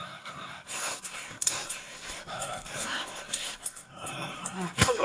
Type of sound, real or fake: fake